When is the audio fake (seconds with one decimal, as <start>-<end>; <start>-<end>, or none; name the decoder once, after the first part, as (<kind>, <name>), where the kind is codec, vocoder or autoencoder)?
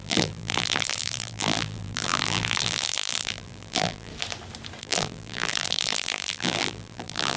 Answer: 0.0-4.1 (vocoder, BigVGAN v2); 4.8-7.4